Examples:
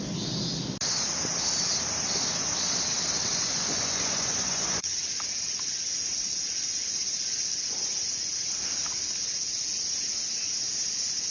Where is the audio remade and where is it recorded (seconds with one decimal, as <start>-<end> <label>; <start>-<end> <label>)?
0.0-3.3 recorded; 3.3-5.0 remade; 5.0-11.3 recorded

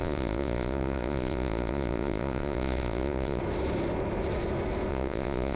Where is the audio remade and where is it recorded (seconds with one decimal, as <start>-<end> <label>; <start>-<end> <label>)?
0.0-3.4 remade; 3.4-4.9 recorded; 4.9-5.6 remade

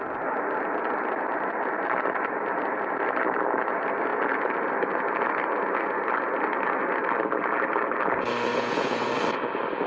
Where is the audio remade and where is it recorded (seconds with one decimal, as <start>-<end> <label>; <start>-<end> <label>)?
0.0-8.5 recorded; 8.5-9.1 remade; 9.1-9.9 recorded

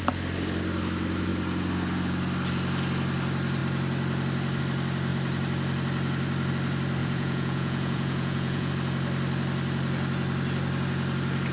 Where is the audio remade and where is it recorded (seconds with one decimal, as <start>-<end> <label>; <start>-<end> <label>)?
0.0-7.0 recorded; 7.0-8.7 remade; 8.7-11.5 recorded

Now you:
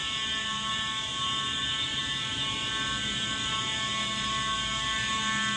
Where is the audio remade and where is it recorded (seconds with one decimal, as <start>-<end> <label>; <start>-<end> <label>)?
0.0-5.6 recorded